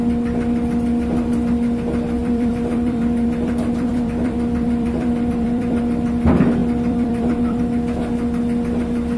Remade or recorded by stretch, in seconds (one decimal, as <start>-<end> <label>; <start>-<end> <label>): 0.0-2.2 recorded; 2.2-5.8 remade; 5.8-6.6 recorded; 6.6-7.6 remade; 7.6-9.2 recorded